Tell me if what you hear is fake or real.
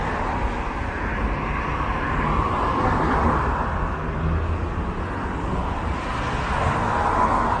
real